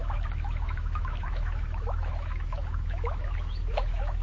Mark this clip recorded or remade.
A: remade